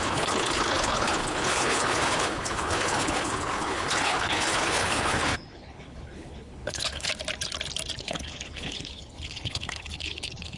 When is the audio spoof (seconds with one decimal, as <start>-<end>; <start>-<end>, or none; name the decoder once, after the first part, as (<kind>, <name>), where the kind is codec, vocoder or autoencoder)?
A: 0.0-7.1 (codec, HILCodec); 8.0-10.6